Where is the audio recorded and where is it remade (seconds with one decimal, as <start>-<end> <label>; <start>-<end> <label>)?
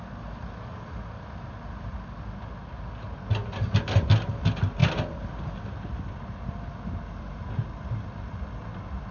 0.0-9.1 recorded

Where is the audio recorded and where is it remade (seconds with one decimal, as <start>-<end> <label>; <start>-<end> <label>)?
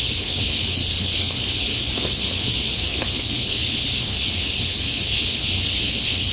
0.0-6.3 remade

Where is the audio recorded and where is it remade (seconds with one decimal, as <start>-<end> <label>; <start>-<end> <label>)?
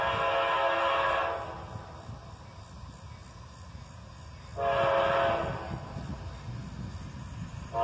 0.0-7.8 recorded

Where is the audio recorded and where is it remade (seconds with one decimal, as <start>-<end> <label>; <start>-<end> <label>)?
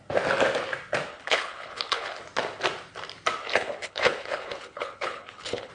0.0-1.1 recorded; 1.1-2.2 remade; 2.2-3.4 recorded; 3.4-5.7 remade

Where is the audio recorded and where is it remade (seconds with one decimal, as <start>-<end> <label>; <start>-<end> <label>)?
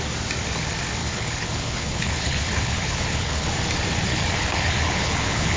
0.0-1.0 recorded; 1.0-3.5 remade; 3.5-4.1 recorded; 4.1-5.6 remade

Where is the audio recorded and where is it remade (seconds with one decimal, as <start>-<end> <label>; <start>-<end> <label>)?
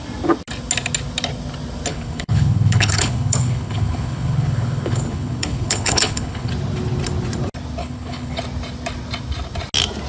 0.0-1.9 recorded; 1.9-6.5 remade; 6.5-7.8 recorded; 7.8-8.4 remade; 8.4-10.1 recorded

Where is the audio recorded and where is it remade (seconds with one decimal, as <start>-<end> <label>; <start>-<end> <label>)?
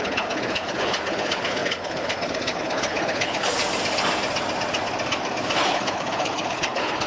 0.0-3.6 remade; 3.6-5.6 recorded; 5.6-7.1 remade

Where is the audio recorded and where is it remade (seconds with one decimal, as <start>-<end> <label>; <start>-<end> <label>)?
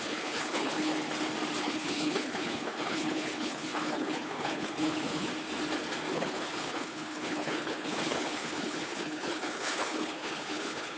0.0-0.9 remade; 0.9-1.6 recorded; 1.6-5.3 remade; 5.3-6.1 recorded; 6.1-11.0 remade